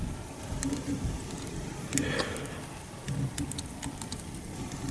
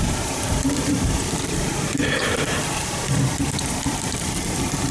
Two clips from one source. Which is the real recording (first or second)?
first